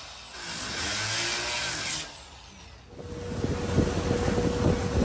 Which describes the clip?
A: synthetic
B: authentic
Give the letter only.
B